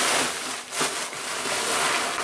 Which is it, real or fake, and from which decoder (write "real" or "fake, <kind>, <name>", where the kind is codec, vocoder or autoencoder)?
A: real